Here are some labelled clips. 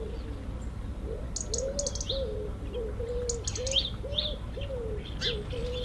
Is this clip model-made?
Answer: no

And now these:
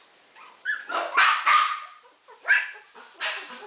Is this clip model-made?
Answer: no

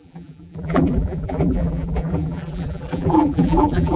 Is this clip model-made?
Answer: yes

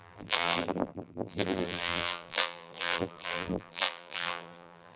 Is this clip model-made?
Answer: yes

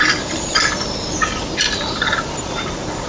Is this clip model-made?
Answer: yes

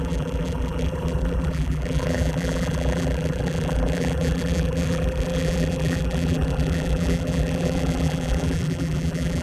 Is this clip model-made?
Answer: yes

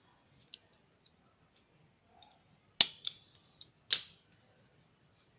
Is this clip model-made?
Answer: no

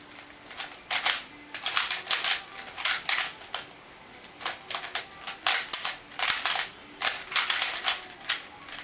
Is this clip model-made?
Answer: no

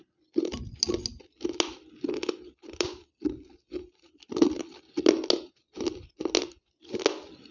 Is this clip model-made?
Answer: no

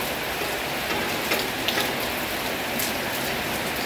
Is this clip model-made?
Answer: no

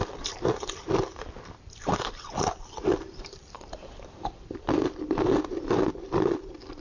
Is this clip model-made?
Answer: yes